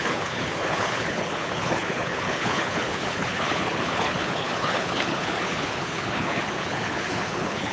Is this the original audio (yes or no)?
no